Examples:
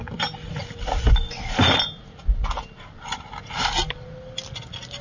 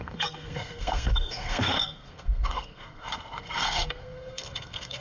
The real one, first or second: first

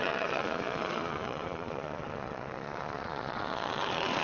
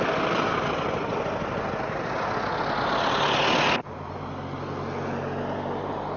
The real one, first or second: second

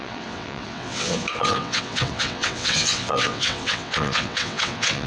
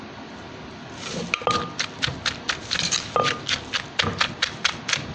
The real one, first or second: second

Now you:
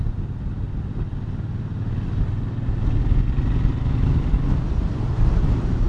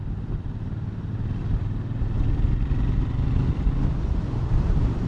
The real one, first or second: first